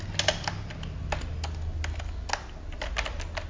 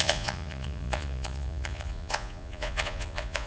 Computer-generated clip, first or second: second